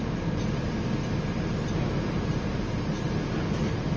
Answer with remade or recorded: recorded